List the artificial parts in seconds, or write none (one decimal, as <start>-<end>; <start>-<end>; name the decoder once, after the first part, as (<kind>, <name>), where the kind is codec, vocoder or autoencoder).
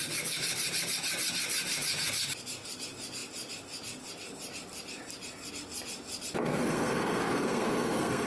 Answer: 6.4-8.3 (codec, SNAC)